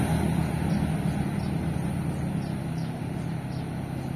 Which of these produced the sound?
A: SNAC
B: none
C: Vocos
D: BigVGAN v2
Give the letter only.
B